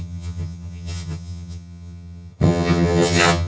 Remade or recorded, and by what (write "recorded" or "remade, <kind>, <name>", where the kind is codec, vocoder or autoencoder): remade, vocoder, HiFi-GAN